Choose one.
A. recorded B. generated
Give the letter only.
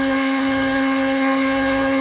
B